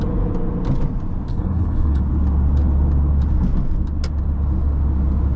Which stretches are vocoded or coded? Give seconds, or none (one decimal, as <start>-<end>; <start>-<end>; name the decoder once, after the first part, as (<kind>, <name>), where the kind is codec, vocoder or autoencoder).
1.3-2.0 (codec, HILCodec)